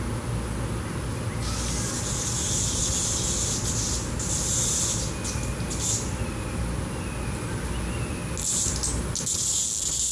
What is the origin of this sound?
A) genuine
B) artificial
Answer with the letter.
A